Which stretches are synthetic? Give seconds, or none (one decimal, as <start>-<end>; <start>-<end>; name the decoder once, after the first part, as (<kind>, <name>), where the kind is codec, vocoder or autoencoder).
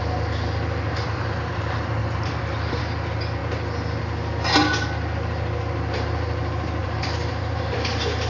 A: 0.9-1.6 (vocoder, BigVGAN v2); 2.0-2.8; 6.8-7.9